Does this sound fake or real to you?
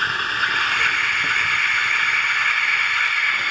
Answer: real